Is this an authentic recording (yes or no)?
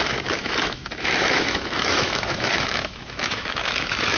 no